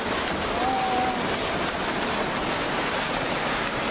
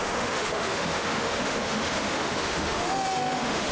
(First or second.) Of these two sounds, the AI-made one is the second